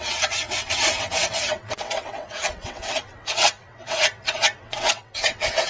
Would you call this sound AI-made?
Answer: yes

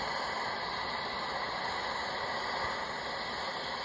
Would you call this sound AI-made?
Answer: no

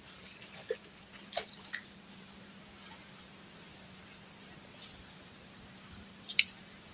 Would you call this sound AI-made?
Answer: no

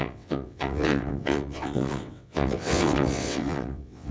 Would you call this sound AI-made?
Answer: yes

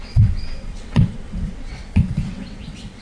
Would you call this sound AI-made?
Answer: yes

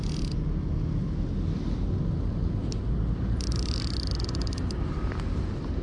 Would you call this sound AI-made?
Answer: no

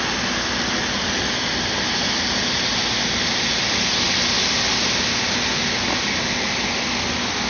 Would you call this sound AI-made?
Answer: no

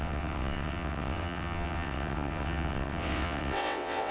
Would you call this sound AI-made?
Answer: yes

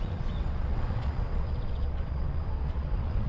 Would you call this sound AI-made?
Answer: yes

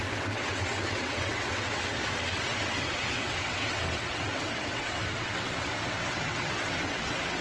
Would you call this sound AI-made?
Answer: yes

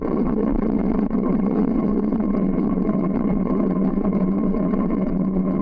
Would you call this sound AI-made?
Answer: yes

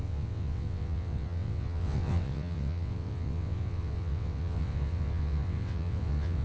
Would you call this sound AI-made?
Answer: yes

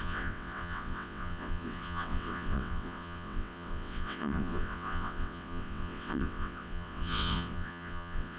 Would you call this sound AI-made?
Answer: yes